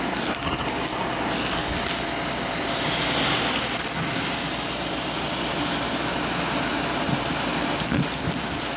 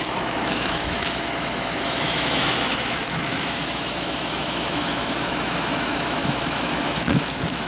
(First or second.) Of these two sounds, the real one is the first